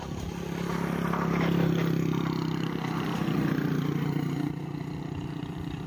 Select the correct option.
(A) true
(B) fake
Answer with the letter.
A